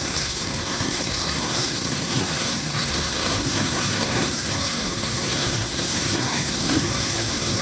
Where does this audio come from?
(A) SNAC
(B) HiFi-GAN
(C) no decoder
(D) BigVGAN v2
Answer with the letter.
A